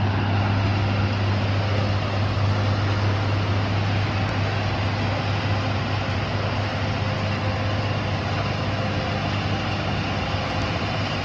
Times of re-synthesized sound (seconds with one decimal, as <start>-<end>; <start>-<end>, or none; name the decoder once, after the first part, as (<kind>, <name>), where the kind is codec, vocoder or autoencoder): none